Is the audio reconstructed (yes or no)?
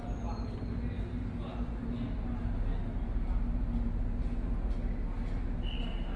no